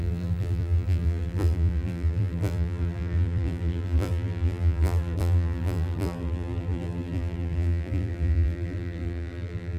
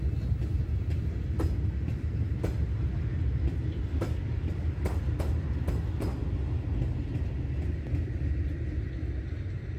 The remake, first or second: first